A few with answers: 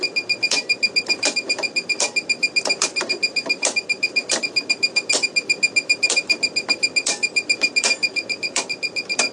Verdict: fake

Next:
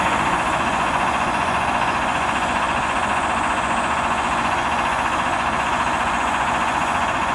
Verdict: fake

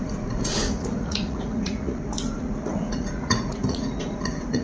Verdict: fake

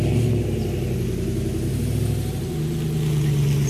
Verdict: real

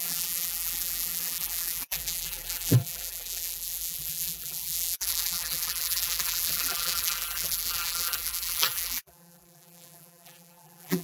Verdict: fake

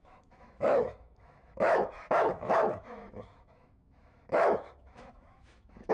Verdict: fake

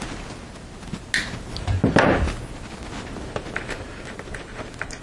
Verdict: real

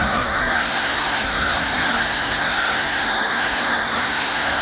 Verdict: fake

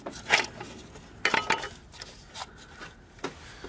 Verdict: real